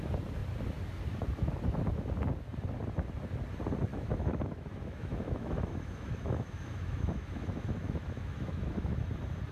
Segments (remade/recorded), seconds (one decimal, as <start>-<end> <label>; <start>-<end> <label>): 0.0-3.9 recorded; 3.9-9.0 remade; 9.0-9.5 recorded